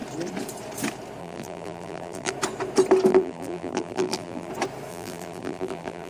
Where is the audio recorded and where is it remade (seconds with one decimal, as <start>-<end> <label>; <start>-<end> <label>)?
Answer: 0.0-1.2 recorded; 1.2-2.3 remade; 2.3-3.1 recorded; 3.1-4.5 remade; 4.5-4.9 recorded; 4.9-6.1 remade